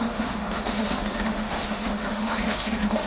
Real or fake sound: fake